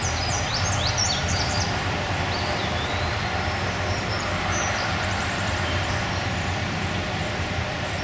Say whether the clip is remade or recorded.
remade